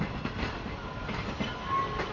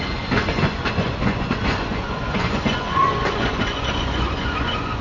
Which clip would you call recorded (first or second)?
first